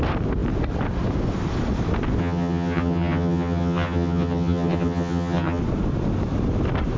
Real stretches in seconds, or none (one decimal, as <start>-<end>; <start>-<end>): 0.0-2.2; 5.6-7.0